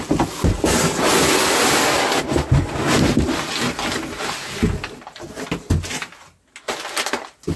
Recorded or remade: recorded